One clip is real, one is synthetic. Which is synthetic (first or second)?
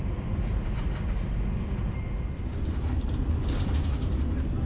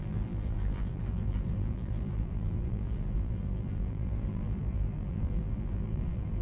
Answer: second